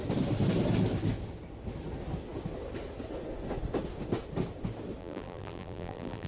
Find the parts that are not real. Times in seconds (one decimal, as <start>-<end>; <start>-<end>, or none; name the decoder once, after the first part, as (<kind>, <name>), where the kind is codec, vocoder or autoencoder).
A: 5.0-6.3 (vocoder, BigVGAN v2)